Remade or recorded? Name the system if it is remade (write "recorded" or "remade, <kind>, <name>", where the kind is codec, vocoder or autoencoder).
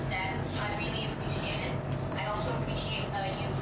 recorded